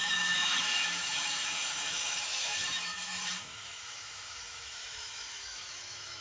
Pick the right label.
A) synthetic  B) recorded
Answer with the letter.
A